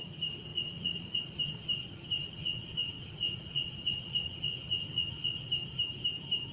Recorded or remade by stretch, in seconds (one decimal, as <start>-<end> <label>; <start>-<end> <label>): 0.0-0.5 recorded; 0.5-1.2 remade; 1.2-2.2 recorded; 2.2-5.5 remade; 5.5-6.5 recorded